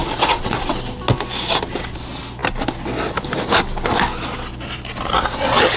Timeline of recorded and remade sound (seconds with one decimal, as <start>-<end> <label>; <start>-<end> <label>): 0.0-0.7 remade; 0.7-5.8 recorded